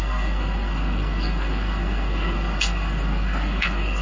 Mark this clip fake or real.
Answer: fake